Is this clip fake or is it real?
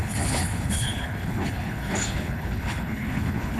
fake